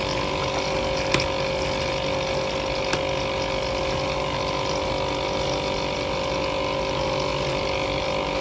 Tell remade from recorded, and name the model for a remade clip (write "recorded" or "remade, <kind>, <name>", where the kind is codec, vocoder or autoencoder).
recorded